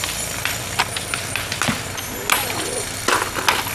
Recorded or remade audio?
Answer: recorded